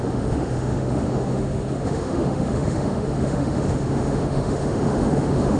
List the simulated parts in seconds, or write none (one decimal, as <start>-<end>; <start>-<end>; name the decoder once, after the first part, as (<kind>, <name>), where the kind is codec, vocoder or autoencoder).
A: 0.0-5.6 (autoencoder, DAC-VAE)

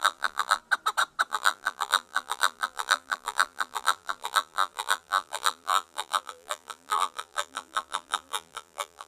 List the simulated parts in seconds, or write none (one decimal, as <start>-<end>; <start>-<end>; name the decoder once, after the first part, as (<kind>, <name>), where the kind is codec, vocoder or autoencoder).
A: 0.0-0.6 (vocoder, BigVGAN v2); 1.3-9.1

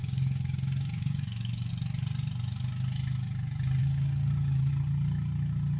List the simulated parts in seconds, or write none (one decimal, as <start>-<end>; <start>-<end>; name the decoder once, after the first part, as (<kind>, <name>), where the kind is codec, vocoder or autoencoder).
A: 0.0-1.7 (codec, DAC); 3.8-4.7

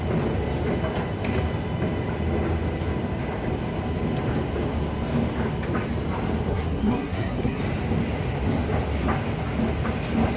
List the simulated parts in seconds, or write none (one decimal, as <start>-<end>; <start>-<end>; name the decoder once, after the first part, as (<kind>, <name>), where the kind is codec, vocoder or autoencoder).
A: 6.5-7.6 (codec, SNAC)